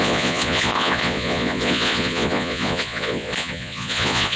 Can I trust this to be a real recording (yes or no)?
no